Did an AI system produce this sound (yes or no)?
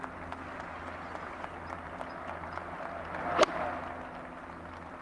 no